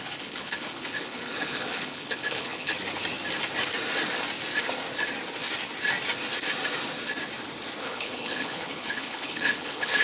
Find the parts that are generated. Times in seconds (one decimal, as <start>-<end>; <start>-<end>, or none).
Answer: 0.0-2.7; 7.8-10.0